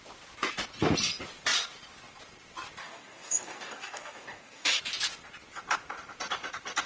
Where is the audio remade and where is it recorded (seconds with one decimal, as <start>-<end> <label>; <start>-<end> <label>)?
0.0-2.8 recorded; 2.8-4.8 remade; 4.8-6.9 recorded